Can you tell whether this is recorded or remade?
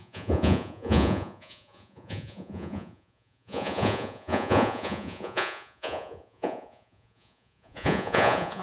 remade